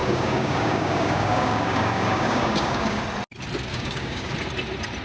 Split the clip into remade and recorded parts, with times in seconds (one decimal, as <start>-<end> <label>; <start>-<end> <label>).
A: 0.0-3.0 remade; 3.0-3.7 recorded; 3.7-4.3 remade; 4.3-5.0 recorded